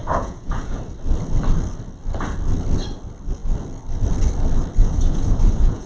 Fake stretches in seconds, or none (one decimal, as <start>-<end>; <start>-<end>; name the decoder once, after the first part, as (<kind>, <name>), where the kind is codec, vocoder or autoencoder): 0.0-0.8 (vocoder, Vocos); 4.8-5.9